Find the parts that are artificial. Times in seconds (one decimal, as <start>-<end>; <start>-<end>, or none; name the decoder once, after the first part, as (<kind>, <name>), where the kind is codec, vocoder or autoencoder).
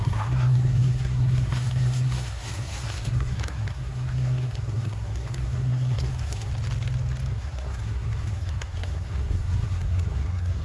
0.0-6.5 (codec, SNAC); 7.3-10.6